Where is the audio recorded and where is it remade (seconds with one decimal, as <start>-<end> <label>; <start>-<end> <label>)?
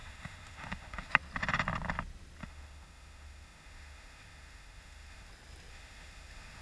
0.0-1.1 remade; 1.1-2.4 recorded; 2.4-5.3 remade; 5.3-5.7 recorded; 5.7-6.6 remade